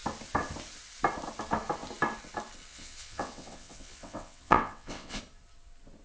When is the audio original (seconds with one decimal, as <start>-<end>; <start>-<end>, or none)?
0.0-2.7; 5.2-6.0